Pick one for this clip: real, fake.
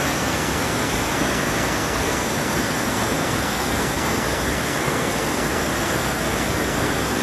fake